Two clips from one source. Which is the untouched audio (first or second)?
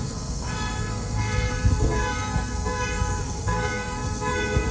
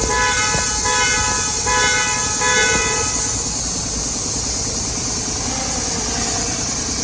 second